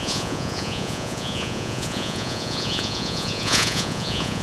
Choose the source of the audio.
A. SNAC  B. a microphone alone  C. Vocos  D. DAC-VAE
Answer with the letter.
C